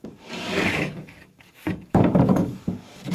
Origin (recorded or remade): remade